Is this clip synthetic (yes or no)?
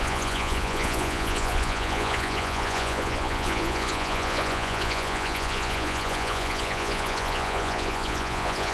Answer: yes